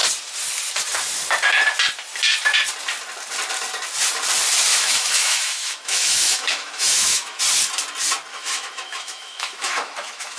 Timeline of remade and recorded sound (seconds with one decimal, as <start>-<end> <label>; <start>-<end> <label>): 0.0-4.7 recorded; 4.7-7.4 remade; 7.4-8.3 recorded; 8.3-10.4 remade